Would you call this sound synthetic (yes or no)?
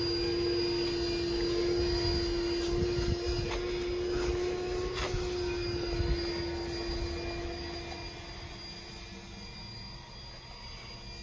no